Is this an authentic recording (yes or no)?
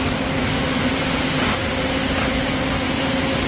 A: yes